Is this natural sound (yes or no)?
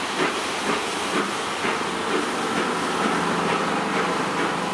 yes